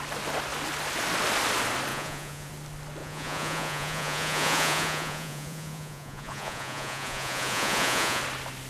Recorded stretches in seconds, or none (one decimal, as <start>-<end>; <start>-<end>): 0.0-1.9; 2.5-3.0; 8.2-8.7